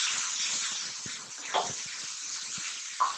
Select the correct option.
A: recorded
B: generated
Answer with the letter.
A